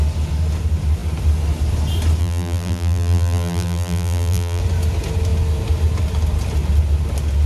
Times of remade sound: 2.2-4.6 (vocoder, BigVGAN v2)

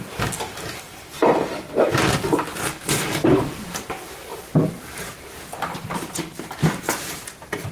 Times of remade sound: 2.5-3.9 (vocoder, BigVGAN v2)

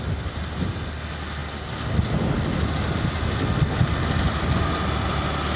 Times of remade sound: none

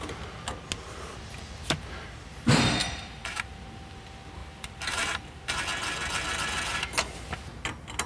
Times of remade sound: 2.8-3.5 (vocoder, BigVGAN v2); 4.4-5.4

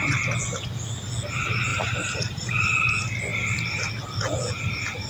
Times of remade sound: 1.7-2.9 (vocoder, BigVGAN v2); 3.3-3.9

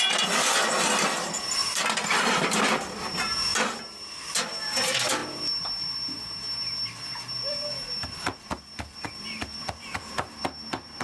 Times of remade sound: 0.0-11.0 (vocoder, BigVGAN v2)

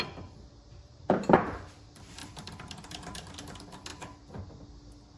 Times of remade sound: 0.9-1.7 (vocoder, BigVGAN v2); 2.2-3.4; 3.9-4.5

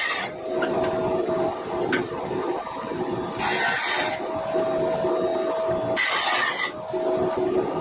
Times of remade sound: none